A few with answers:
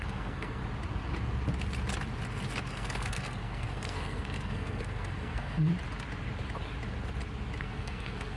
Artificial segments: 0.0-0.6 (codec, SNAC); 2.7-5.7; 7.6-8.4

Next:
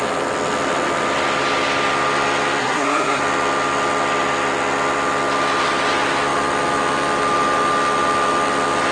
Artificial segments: 2.6-3.2 (codec, SNAC)

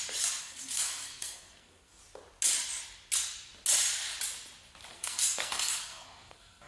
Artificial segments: 0.4-2.0 (codec, SNAC); 4.9-6.7

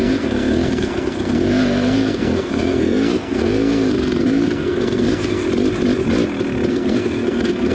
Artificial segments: 0.0-5.4 (codec, SNAC); 6.7-7.7

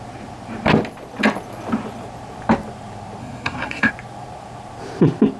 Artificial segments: 3.2-3.9 (codec, SNAC)

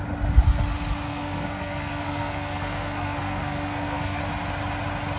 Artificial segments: 1.1-4.2 (codec, SNAC)

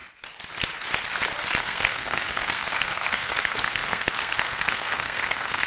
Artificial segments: 1.6-5.7 (codec, SNAC)

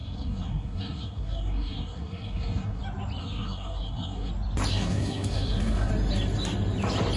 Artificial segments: 0.0-2.8 (codec, SNAC); 3.2-4.3; 4.7-5.9